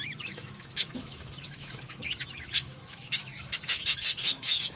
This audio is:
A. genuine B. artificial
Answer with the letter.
B